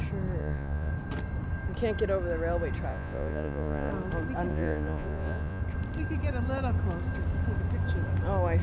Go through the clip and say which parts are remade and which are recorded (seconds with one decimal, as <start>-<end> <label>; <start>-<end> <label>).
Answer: 0.0-0.4 recorded; 0.4-0.9 remade; 0.9-2.9 recorded; 2.9-3.9 remade; 3.9-4.5 recorded; 4.5-5.6 remade; 5.6-8.6 recorded